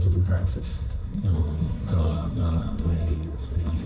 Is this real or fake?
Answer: fake